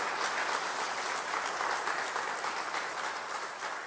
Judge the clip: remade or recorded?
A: recorded